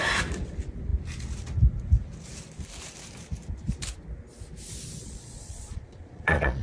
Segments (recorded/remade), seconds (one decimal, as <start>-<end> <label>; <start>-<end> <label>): 0.0-5.0 recorded; 5.0-6.6 remade